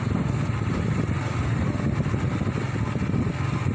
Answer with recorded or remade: recorded